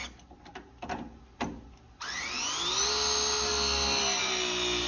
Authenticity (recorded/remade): recorded